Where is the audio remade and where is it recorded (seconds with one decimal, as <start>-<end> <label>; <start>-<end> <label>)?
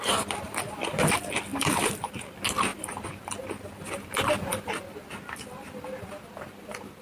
0.0-1.5 recorded; 1.5-2.1 remade; 2.1-7.0 recorded